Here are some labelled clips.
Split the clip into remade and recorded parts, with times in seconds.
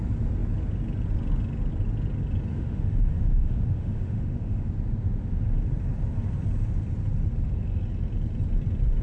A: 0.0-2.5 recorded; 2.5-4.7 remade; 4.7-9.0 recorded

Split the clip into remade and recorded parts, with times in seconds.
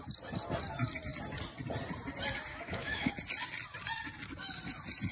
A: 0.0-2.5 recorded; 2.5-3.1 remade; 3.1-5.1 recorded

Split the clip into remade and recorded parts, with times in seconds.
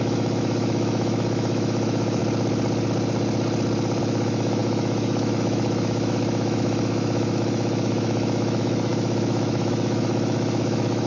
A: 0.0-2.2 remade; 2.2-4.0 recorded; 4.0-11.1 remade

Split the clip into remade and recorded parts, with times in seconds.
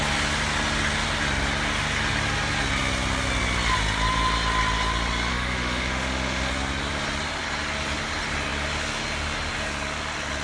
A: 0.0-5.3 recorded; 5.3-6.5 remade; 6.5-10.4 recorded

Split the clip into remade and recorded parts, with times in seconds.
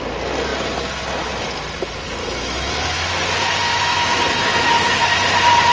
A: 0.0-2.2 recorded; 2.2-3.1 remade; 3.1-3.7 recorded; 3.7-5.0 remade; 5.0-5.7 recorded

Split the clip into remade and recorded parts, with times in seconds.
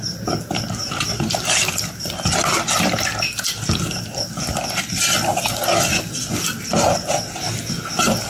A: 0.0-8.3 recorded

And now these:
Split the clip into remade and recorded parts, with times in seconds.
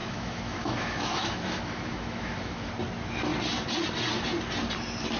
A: 0.0-2.7 remade; 2.7-5.2 recorded